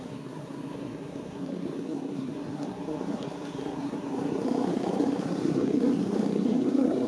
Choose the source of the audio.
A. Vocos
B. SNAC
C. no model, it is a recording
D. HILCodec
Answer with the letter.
B